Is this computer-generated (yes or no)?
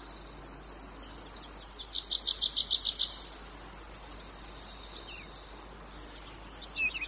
no